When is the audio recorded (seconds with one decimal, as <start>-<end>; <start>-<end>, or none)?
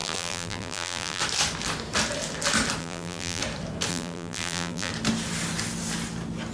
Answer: 1.2-2.8; 3.4-3.9; 4.9-6.5